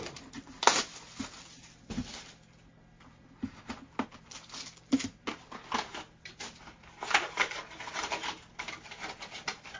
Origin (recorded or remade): recorded